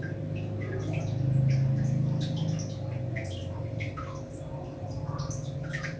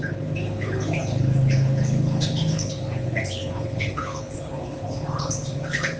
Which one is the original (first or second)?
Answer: first